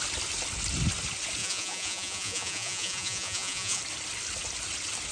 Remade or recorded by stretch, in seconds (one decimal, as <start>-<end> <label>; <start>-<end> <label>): 0.0-1.4 recorded; 1.4-3.8 remade; 3.8-5.1 recorded